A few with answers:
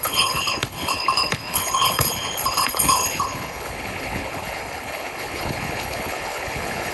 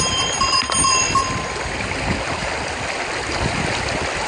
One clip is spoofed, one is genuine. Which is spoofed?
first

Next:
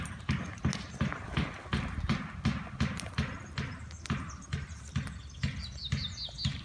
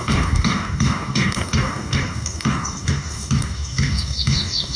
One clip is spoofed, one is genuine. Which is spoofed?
second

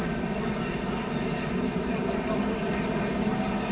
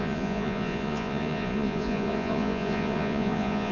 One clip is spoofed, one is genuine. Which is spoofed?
second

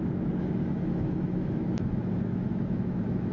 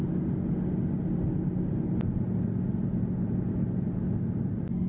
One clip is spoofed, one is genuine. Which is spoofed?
first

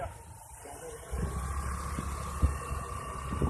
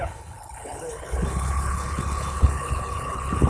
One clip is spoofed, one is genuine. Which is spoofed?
second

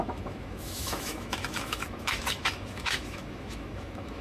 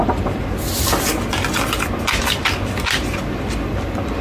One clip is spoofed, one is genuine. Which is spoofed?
first